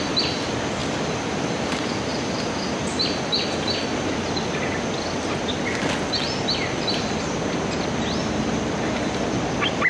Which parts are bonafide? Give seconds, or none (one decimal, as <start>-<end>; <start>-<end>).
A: 0.0-9.9